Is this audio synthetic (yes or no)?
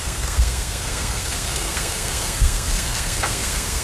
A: yes